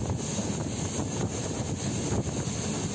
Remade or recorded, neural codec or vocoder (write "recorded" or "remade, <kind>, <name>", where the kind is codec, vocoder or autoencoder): recorded